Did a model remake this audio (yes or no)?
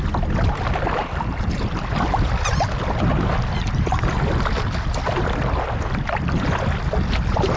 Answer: no